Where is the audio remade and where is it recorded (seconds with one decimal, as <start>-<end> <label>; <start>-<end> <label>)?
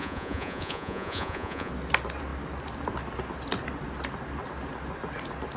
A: 0.0-1.7 remade; 1.7-5.6 recorded